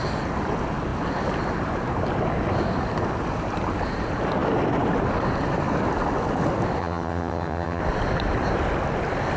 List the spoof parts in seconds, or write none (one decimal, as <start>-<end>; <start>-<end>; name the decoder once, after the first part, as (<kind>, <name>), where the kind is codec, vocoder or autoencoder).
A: 6.8-7.8 (vocoder, HiFi-GAN)